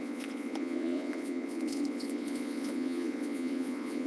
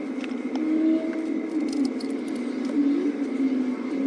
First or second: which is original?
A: second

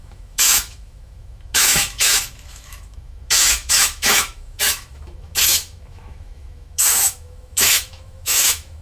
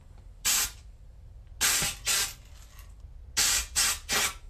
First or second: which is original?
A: second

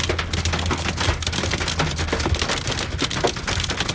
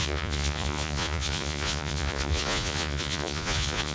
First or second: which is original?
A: first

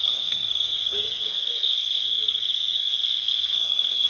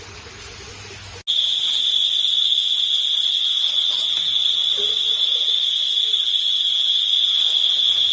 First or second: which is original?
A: second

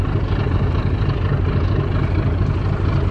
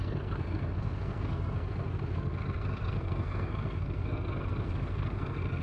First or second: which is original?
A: first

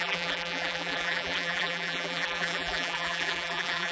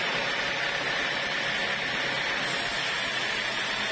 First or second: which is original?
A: second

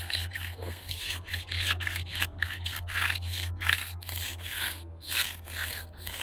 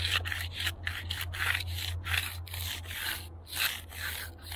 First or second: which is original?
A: second